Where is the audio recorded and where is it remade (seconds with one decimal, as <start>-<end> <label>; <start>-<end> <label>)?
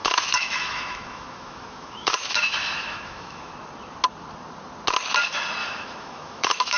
0.0-3.5 remade; 3.5-5.6 recorded; 5.6-6.8 remade